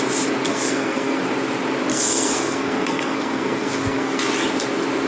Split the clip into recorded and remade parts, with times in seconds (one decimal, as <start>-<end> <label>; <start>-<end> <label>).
0.0-0.5 recorded; 0.5-1.2 remade; 1.2-1.9 recorded; 1.9-4.3 remade; 4.3-5.1 recorded